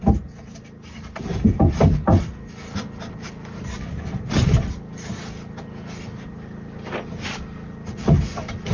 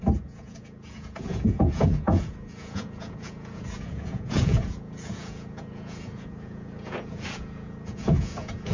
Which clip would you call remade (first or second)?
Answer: second